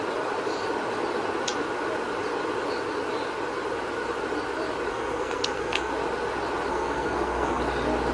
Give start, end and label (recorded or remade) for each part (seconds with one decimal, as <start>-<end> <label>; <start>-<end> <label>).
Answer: 0.0-4.9 recorded; 4.9-5.9 remade; 5.9-6.7 recorded; 6.7-7.6 remade; 7.6-8.1 recorded